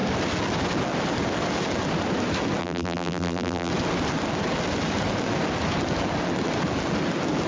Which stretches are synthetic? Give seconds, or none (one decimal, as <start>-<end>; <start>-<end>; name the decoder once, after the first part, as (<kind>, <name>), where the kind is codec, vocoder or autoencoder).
2.6-3.7 (vocoder, BigVGAN v2)